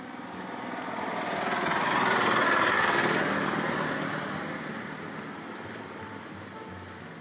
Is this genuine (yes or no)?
yes